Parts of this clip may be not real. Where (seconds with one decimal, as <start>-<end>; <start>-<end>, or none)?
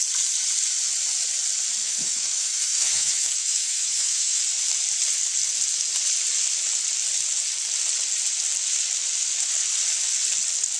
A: 1.8-4.4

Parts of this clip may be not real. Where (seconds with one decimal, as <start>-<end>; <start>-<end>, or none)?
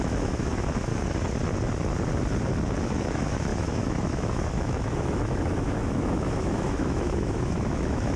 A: 0.0-0.9; 2.8-8.2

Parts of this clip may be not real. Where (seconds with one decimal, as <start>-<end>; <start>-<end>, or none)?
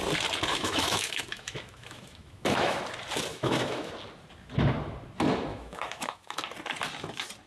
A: 0.5-2.8; 3.3-3.9; 5.5-6.4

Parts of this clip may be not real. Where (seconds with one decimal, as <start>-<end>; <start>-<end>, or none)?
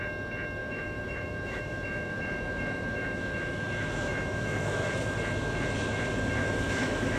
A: 0.6-4.9; 6.4-7.2